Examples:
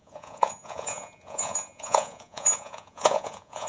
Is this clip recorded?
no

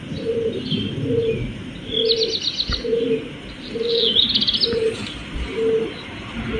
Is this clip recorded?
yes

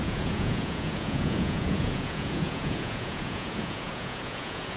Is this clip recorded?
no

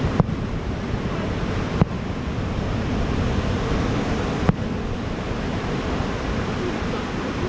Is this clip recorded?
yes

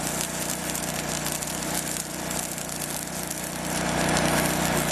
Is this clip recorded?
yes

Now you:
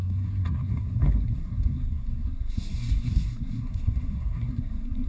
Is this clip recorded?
no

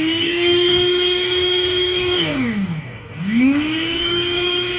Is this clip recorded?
no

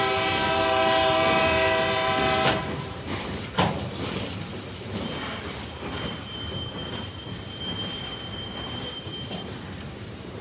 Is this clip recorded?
no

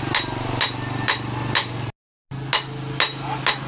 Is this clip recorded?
yes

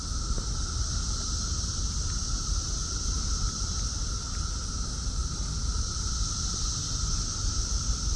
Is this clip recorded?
yes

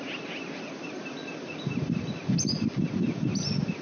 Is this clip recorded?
yes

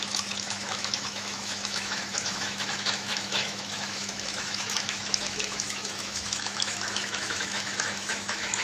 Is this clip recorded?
no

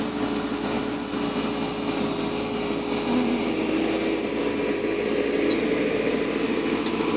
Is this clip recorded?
yes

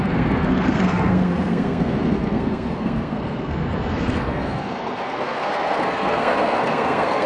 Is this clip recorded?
no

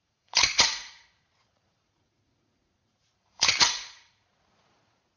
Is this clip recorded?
no